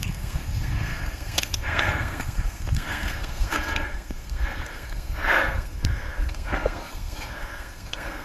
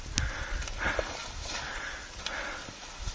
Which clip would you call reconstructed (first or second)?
first